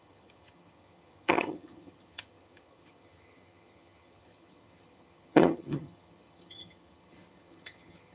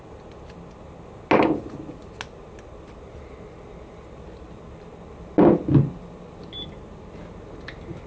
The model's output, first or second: first